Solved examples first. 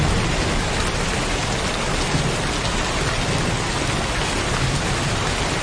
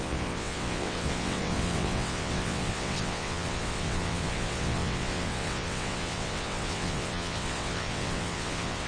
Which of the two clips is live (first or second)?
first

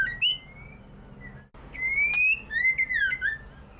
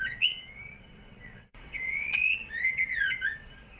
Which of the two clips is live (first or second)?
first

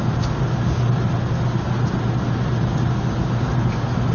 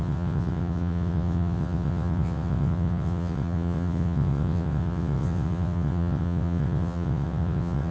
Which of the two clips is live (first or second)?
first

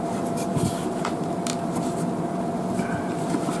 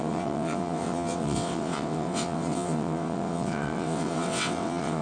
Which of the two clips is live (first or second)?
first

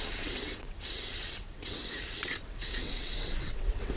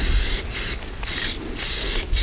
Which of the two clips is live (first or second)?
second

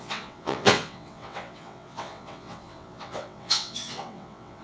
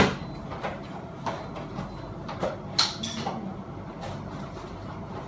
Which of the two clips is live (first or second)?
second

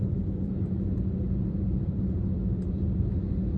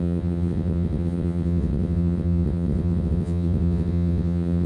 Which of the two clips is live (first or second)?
first